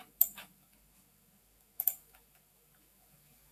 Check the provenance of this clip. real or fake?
fake